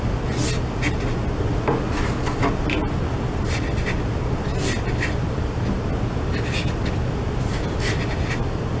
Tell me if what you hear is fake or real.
real